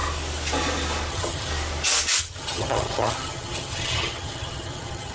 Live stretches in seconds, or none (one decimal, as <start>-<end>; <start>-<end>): 0.0-1.1; 1.5-2.2